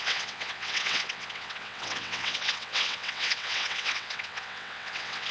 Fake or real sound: fake